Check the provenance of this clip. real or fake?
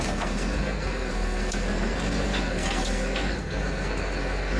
fake